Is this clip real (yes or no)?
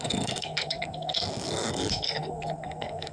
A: no